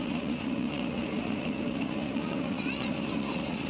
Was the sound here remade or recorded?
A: remade